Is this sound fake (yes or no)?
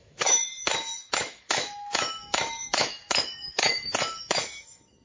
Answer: yes